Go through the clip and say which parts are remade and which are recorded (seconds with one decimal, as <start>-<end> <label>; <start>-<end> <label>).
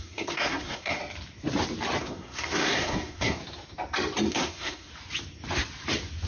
0.0-1.0 remade; 1.0-2.0 recorded; 2.0-3.4 remade; 3.4-4.3 recorded; 4.3-4.9 remade; 4.9-6.3 recorded